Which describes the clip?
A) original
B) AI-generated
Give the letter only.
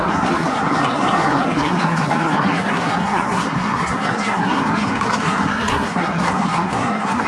B